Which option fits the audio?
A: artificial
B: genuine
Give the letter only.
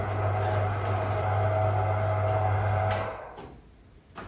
B